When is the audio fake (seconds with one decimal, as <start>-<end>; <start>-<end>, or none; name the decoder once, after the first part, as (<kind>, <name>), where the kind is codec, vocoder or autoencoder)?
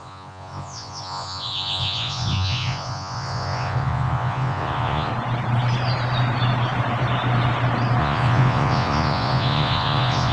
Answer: 0.0-5.1 (vocoder, Vocos); 8.0-10.3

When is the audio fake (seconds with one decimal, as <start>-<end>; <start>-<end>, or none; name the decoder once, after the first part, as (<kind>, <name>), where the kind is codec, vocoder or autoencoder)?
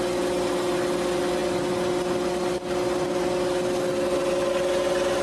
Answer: none